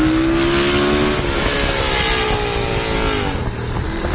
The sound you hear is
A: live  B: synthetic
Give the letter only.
A